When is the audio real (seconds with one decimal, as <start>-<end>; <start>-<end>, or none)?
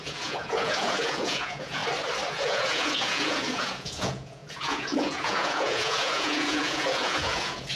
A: 1.8-2.3